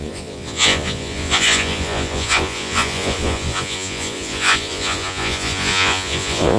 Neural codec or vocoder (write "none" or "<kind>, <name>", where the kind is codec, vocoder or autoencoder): vocoder, Vocos